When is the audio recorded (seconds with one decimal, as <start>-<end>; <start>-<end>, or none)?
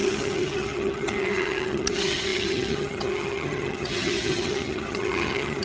none